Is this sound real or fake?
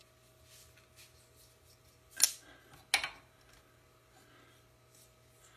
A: real